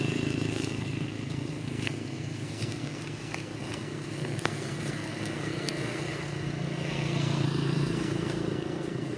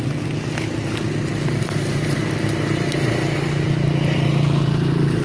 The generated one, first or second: first